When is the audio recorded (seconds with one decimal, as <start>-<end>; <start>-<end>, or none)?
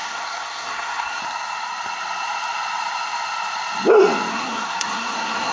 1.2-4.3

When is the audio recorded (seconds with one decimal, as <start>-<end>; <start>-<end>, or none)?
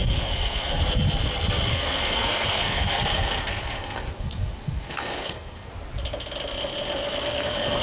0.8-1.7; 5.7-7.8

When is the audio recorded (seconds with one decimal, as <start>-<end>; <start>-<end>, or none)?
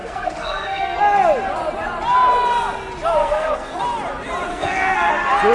1.0-3.2; 3.8-4.5; 5.1-5.5